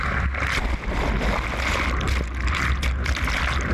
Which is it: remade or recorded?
recorded